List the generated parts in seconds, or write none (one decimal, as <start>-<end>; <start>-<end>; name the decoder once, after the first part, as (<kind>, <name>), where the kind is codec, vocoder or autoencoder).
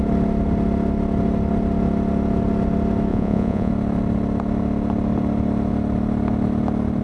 3.1-3.7 (vocoder, Vocos)